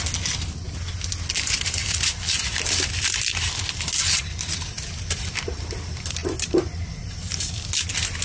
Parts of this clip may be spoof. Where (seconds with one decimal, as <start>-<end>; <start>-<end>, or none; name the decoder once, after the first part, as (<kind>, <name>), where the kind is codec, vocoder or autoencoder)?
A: 2.5-3.3 (vocoder, BigVGAN v2); 6.2-7.2